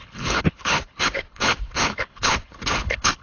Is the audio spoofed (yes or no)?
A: yes